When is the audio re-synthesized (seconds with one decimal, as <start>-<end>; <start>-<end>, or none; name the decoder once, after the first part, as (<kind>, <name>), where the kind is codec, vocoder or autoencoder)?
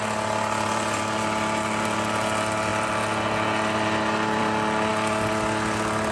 none